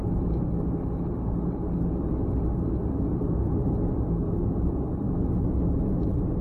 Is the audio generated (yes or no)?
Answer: no